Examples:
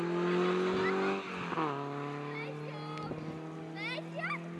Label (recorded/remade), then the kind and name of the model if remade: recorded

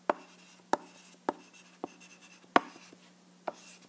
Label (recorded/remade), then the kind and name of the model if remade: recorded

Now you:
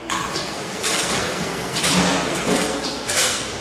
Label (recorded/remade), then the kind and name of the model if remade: remade, codec, SNAC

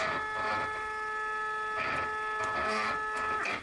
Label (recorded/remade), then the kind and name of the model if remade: recorded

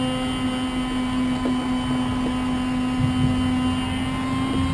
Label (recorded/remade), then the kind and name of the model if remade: recorded